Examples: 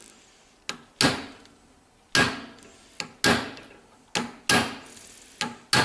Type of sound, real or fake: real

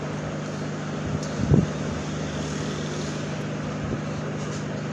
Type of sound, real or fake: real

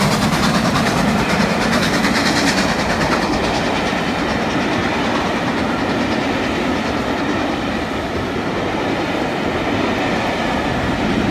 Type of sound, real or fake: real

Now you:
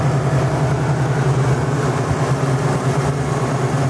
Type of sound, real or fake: real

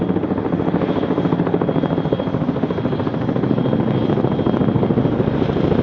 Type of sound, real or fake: real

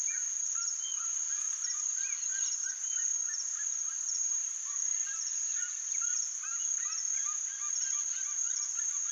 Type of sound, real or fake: real